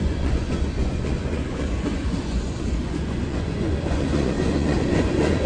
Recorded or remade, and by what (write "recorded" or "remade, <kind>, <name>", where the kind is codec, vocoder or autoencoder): remade, vocoder, Vocos